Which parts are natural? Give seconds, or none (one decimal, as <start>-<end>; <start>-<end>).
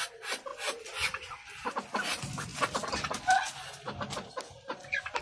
0.0-0.5; 1.7-5.2